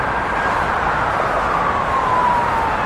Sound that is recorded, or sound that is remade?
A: remade